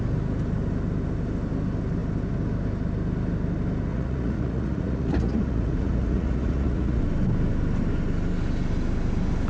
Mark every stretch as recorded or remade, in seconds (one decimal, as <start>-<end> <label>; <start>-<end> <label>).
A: 0.0-3.9 recorded; 3.9-7.0 remade; 7.0-9.5 recorded